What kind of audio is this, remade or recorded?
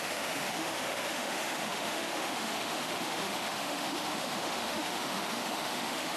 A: remade